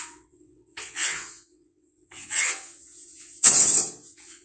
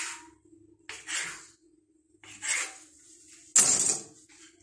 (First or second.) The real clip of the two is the second